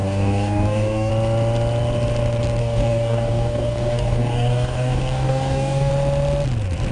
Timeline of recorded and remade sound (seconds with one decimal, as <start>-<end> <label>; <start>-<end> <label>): 0.0-1.1 remade; 1.1-2.6 recorded; 2.6-5.9 remade; 5.9-6.9 recorded